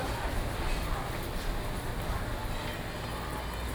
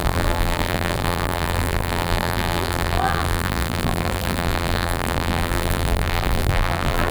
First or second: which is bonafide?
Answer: first